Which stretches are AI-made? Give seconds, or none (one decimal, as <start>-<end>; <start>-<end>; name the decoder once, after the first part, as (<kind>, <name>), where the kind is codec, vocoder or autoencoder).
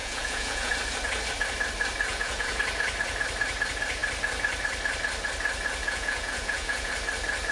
0.0-0.7 (vocoder, Vocos); 2.1-2.6; 5.8-6.9